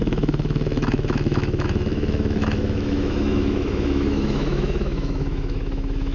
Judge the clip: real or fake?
fake